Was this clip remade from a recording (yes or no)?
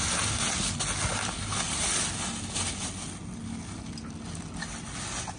no